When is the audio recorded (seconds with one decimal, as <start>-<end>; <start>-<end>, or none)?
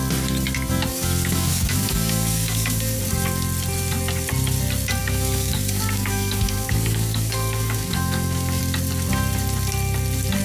0.0-0.9; 3.0-5.0; 8.6-10.4